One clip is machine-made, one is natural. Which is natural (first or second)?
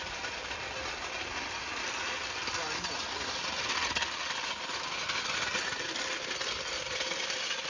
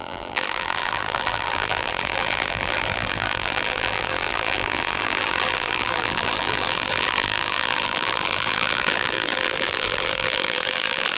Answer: first